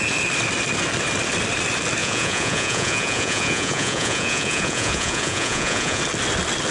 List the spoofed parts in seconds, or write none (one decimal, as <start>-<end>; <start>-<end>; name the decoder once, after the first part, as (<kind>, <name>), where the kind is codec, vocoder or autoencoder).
2.0-6.0 (vocoder, Vocos)